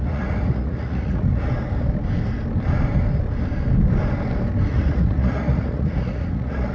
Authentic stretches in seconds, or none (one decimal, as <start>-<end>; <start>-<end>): 1.5-4.7